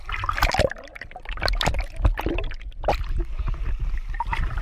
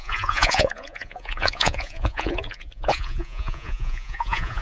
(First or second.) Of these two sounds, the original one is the first